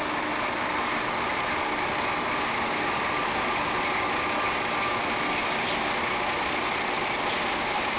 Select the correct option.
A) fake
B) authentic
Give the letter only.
B